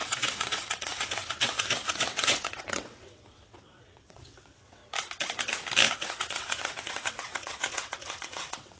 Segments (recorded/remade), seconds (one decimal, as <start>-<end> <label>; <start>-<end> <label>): 0.0-4.8 remade; 4.8-5.9 recorded; 5.9-8.8 remade